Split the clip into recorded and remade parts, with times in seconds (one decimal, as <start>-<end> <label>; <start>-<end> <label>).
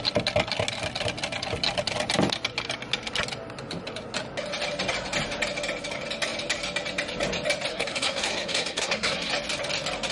0.0-7.7 recorded; 7.7-9.3 remade; 9.3-10.1 recorded